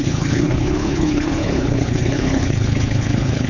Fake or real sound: fake